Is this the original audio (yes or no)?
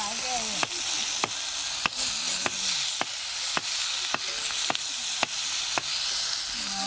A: yes